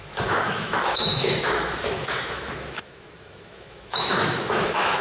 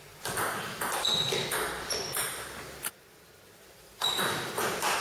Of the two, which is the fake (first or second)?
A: first